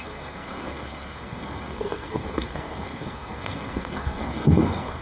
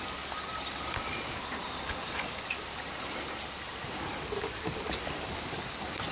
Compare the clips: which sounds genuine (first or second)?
second